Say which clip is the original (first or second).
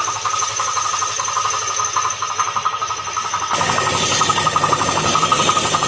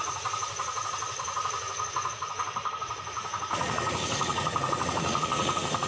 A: first